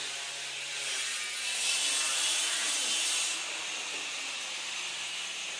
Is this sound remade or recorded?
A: recorded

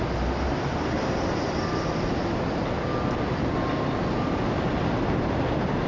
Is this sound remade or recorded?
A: recorded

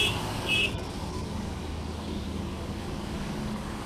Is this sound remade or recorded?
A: remade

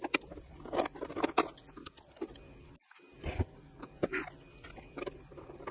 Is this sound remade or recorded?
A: recorded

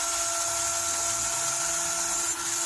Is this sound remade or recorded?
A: recorded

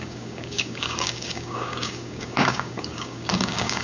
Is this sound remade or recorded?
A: remade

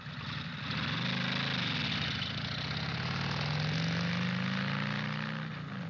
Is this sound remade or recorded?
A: recorded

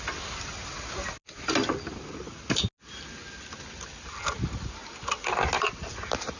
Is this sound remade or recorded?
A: recorded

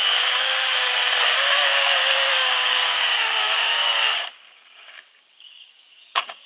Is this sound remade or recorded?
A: remade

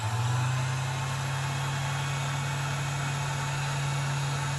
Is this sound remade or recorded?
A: recorded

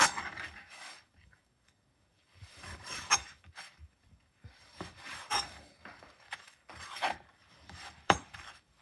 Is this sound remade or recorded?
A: remade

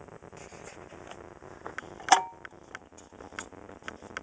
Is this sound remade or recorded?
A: recorded